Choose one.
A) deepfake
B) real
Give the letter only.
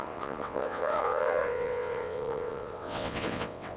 A